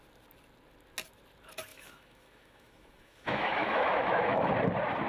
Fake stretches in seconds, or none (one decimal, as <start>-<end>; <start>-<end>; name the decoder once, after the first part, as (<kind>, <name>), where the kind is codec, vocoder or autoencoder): 1.7-4.5 (autoencoder, DAC-VAE)